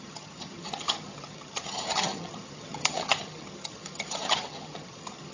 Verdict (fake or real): fake